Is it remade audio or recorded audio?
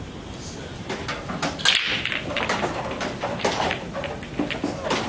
recorded